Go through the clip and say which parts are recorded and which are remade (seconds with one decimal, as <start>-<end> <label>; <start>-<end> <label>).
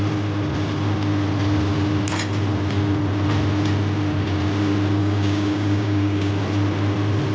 0.0-5.0 recorded; 5.0-6.3 remade; 6.3-7.3 recorded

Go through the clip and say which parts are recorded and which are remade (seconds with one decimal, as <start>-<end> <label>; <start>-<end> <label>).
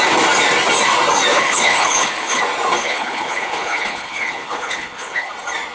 0.0-1.3 recorded; 1.3-2.4 remade; 2.4-2.8 recorded; 2.8-5.3 remade; 5.3-5.7 recorded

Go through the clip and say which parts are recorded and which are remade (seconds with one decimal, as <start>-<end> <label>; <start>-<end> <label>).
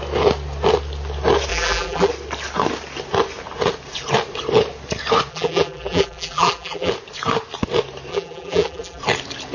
0.0-1.5 recorded; 1.5-2.1 remade; 2.1-5.3 recorded; 5.3-6.9 remade; 6.9-8.1 recorded; 8.1-9.0 remade; 9.0-9.5 recorded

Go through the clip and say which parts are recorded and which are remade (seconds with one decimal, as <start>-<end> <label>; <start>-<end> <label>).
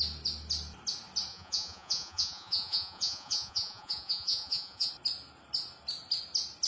0.0-1.3 recorded; 1.3-4.9 remade; 4.9-6.7 recorded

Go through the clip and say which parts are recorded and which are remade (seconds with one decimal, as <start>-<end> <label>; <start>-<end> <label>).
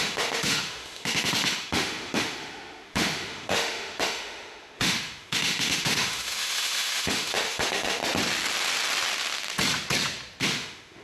0.0-8.0 remade; 8.0-10.4 recorded; 10.4-11.0 remade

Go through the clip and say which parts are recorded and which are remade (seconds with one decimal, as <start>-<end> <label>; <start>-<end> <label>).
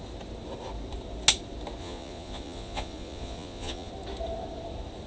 0.0-1.8 recorded; 1.8-3.9 remade; 3.9-5.1 recorded